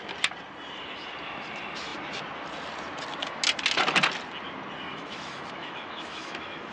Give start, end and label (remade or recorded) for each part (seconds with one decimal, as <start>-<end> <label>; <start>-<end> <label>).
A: 0.0-4.9 recorded; 4.9-6.7 remade